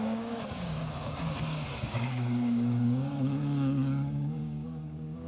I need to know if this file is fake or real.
fake